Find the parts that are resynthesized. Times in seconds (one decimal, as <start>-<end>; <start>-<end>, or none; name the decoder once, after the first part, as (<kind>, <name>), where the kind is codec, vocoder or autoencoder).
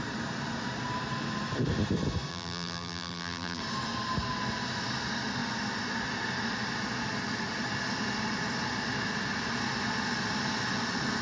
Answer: 2.3-3.6 (vocoder, BigVGAN v2)